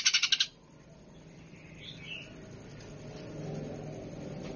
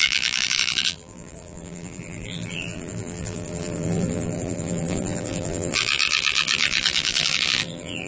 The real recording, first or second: first